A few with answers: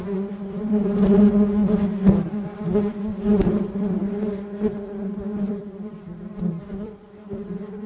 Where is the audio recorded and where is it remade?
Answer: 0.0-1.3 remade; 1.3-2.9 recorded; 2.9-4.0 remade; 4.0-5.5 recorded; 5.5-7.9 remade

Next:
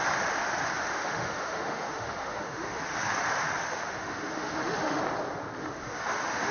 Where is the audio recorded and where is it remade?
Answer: 0.0-1.0 recorded; 1.0-2.8 remade; 2.8-3.6 recorded; 3.6-5.0 remade; 5.0-5.6 recorded; 5.6-6.5 remade

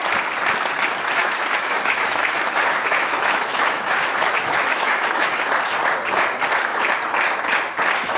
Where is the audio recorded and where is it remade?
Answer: 0.0-1.2 recorded; 1.2-5.3 remade; 5.3-8.2 recorded

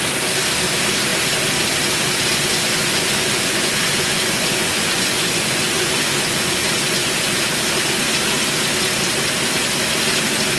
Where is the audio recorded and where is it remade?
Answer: 0.0-2.3 recorded; 2.3-7.4 remade; 7.4-10.6 recorded

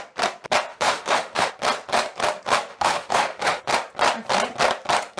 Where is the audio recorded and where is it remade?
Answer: 0.0-0.7 recorded; 0.7-1.5 remade; 1.5-2.7 recorded; 2.7-3.6 remade; 3.6-5.2 recorded

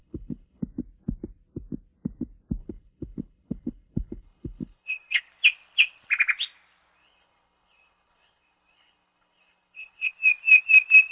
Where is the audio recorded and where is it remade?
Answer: 0.0-0.6 remade; 0.6-2.6 recorded; 2.6-5.2 remade; 5.2-7.0 recorded; 7.0-10.1 remade; 10.1-11.1 recorded